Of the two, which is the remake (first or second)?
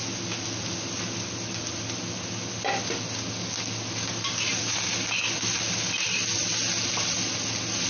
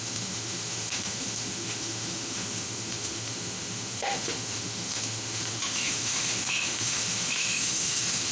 second